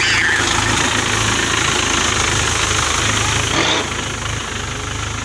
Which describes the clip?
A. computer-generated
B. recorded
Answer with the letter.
B